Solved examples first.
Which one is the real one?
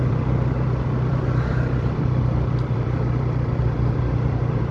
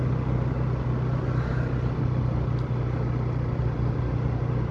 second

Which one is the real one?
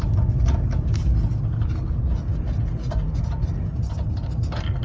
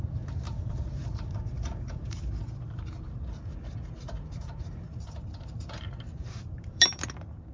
first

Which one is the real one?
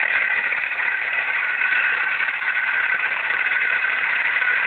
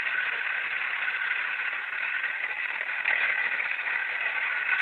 second